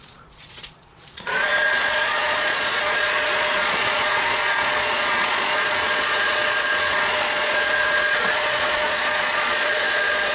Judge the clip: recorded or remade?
remade